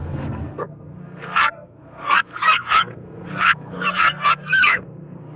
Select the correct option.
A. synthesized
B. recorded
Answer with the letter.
A